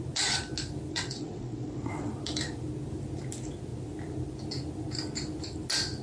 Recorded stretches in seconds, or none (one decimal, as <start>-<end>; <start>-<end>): 0.0-0.9; 2.1-6.0